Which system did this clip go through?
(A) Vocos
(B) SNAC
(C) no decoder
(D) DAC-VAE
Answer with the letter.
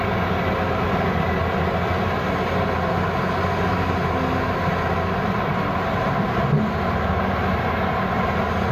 C